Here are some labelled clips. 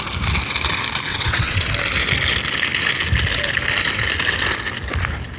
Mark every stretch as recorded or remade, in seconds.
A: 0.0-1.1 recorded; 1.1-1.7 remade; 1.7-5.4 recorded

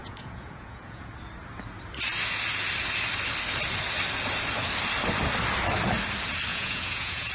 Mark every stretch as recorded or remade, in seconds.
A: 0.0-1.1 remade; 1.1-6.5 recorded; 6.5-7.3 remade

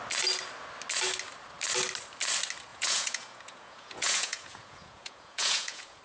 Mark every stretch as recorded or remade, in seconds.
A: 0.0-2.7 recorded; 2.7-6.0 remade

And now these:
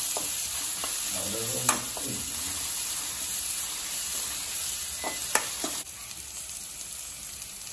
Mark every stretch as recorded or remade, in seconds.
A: 0.0-0.8 remade; 0.8-2.9 recorded; 2.9-7.7 remade

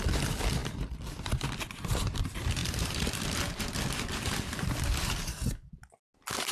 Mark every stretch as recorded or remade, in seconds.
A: 0.0-2.6 recorded; 2.6-3.9 remade; 3.9-6.5 recorded

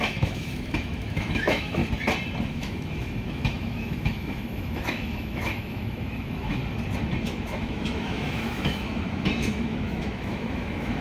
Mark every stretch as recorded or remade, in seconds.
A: 0.0-1.8 remade; 1.8-2.4 recorded; 2.4-6.6 remade; 6.6-7.2 recorded; 7.2-11.0 remade